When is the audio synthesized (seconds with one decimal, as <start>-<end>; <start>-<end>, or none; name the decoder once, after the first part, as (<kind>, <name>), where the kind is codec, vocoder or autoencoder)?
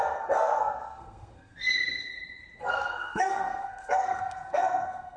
0.0-2.1 (codec, SNAC); 2.6-5.2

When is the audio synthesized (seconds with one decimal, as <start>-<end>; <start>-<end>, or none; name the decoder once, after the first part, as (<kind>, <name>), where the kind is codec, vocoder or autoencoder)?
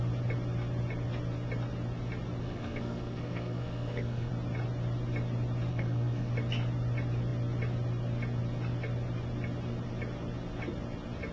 2.4-4.3 (codec, SNAC); 5.7-6.3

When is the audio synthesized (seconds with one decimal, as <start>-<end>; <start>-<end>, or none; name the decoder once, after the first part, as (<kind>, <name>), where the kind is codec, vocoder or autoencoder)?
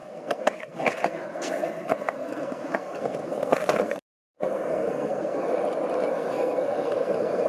0.0-5.5 (codec, SNAC); 6.1-7.5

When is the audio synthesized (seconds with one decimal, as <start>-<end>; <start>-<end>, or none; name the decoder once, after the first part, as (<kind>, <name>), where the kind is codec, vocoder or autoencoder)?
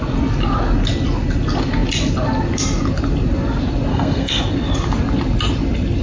3.9-4.4 (codec, SNAC)